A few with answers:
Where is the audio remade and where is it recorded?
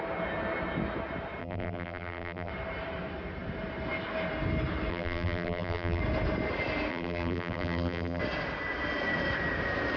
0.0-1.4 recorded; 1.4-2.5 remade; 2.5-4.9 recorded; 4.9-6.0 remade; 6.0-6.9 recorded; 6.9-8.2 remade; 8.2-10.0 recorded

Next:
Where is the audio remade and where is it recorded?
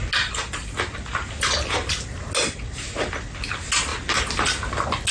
0.0-5.1 recorded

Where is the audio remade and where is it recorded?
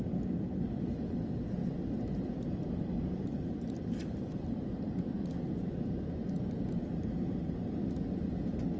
0.0-1.6 recorded; 1.6-6.8 remade; 6.8-8.8 recorded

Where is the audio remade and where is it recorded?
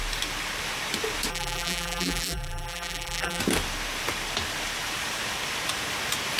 0.0-1.3 recorded; 1.3-3.4 remade; 3.4-6.4 recorded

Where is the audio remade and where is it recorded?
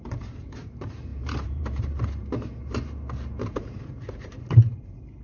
0.0-5.2 remade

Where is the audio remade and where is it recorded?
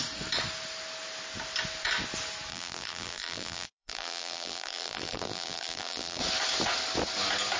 0.0-2.5 recorded; 2.5-6.2 remade; 6.2-7.6 recorded